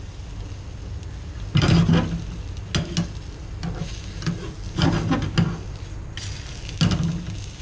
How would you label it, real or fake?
real